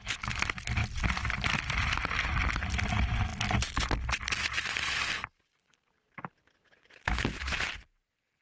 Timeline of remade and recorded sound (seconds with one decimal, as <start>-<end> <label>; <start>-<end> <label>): 0.0-8.4 recorded